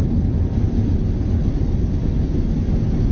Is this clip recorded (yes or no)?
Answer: yes